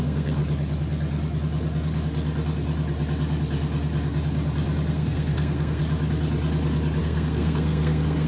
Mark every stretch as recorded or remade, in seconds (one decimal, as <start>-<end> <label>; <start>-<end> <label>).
0.0-0.4 remade; 0.4-4.9 recorded; 4.9-5.8 remade; 5.8-7.0 recorded; 7.0-8.3 remade